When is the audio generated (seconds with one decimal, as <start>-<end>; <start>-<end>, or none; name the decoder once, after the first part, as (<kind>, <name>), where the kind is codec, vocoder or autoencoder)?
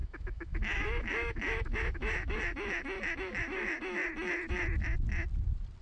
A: 0.0-4.0 (autoencoder, DAC-VAE)